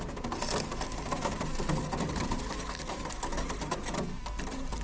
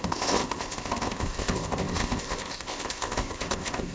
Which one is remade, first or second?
second